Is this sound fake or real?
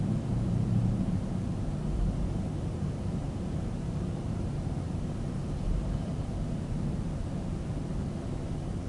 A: fake